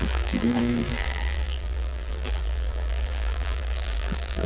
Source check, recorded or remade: remade